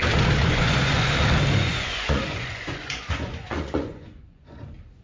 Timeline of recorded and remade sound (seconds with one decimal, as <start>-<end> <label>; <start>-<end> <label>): 0.0-0.4 recorded; 0.4-1.1 remade; 1.1-1.6 recorded; 1.6-4.6 remade; 4.6-5.0 recorded